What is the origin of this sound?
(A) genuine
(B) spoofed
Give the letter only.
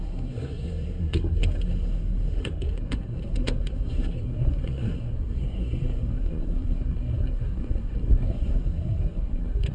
B